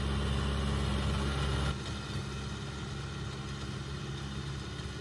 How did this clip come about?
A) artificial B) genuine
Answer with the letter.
B